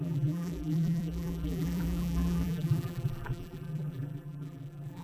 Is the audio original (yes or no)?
no